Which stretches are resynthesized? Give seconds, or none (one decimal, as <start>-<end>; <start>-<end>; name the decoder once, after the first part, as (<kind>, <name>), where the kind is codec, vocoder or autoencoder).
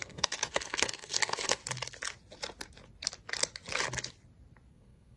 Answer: 0.0-1.6 (codec, SNAC); 4.7-5.2